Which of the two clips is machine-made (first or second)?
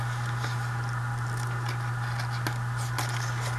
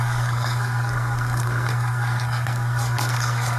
second